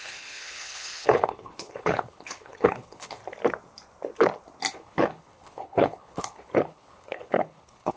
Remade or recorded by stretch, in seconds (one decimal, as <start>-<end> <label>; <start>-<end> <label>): 0.0-3.2 remade; 3.2-4.7 recorded; 4.7-8.0 remade